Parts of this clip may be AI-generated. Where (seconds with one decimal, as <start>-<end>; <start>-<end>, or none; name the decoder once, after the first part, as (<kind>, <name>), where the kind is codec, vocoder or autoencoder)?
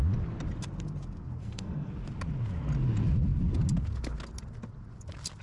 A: 1.4-1.9 (codec, SNAC)